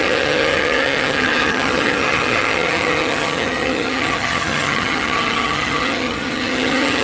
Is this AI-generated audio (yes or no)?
yes